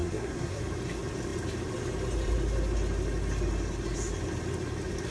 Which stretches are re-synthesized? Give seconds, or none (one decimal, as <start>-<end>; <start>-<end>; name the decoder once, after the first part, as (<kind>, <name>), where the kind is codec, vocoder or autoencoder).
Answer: 0.0-0.6 (codec, SNAC)